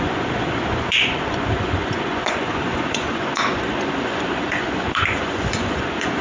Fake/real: fake